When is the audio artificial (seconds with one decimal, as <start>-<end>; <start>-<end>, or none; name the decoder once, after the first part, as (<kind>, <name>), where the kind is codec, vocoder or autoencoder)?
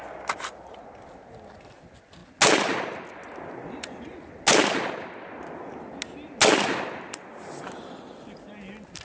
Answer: none